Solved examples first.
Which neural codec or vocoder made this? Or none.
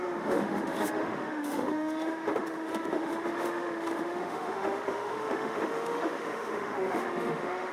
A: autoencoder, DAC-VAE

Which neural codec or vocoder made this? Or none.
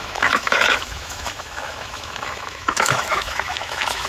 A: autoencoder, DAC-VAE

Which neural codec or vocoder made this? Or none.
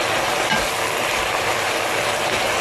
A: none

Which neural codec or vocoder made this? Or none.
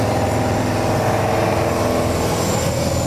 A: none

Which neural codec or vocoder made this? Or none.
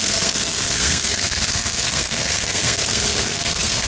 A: codec, SNAC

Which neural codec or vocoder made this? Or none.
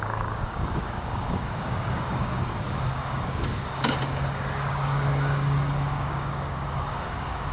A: codec, DAC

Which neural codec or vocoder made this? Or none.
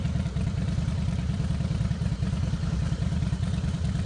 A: vocoder, BigVGAN v2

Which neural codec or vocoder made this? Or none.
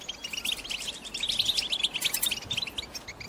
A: none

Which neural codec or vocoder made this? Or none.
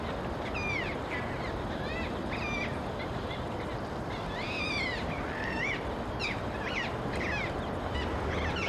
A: none